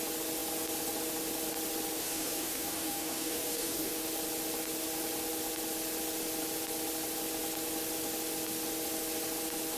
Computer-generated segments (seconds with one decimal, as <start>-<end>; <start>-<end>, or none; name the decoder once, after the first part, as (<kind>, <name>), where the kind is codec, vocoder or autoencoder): 2.0-3.9 (codec, DAC)